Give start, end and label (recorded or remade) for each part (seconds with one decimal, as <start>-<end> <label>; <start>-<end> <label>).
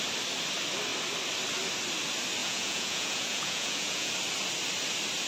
0.0-2.4 recorded; 2.4-4.1 remade; 4.1-5.3 recorded